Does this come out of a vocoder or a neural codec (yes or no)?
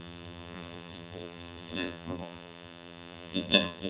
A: yes